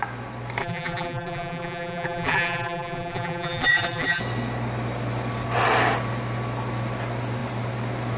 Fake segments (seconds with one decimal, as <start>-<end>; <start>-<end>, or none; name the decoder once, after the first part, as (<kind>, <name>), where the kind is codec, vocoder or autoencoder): 0.6-4.2 (vocoder, BigVGAN v2)